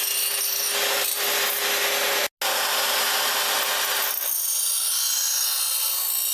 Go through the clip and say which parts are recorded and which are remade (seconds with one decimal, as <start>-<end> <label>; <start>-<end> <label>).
0.0-6.3 recorded